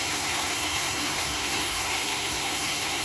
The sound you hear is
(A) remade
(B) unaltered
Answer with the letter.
A